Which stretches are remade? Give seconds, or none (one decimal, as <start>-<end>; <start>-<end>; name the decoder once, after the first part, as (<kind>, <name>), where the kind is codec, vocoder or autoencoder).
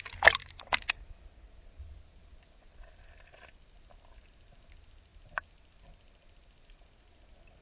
none